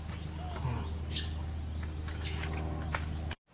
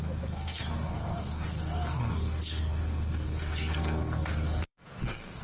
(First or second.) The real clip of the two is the first